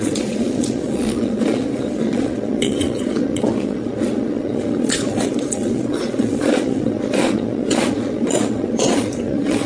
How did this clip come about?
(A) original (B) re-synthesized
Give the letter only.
B